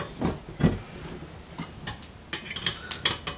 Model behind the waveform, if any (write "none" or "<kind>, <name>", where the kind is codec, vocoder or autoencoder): none